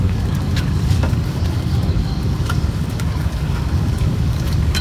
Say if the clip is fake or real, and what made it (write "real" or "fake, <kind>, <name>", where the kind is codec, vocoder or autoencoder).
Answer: fake, codec, DAC